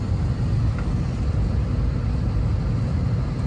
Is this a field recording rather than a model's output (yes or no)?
yes